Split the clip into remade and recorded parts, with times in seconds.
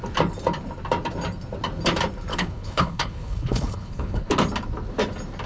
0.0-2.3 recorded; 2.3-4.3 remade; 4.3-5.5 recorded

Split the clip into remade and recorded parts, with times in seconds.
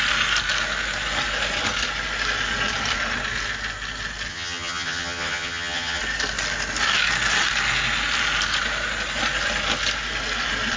0.0-4.3 recorded; 4.3-6.0 remade; 6.0-10.8 recorded